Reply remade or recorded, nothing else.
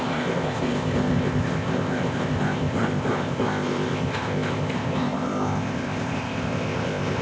remade